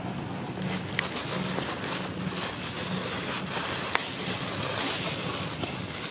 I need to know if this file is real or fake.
real